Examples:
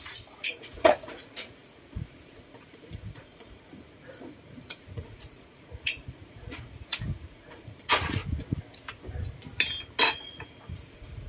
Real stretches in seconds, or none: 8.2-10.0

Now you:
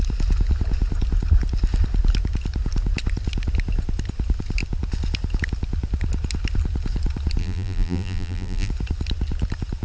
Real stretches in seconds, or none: 0.0-7.4; 8.7-9.8

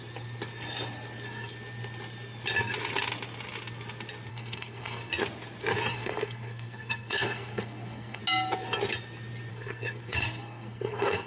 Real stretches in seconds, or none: 0.0-4.3; 5.1-5.9; 8.2-9.5

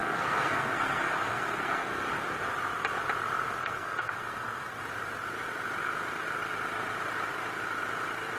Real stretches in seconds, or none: 2.1-3.6; 4.8-8.4

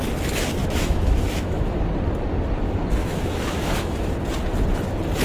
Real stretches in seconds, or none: 0.0-0.6; 1.8-3.0; 4.1-5.2

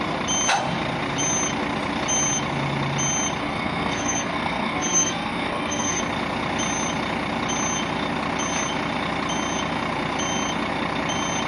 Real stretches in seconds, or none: 0.0-3.4; 6.0-11.5